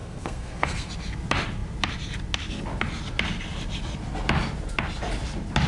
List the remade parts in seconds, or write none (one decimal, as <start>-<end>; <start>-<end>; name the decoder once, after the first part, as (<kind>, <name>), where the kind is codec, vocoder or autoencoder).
0.0-0.9 (codec, SNAC)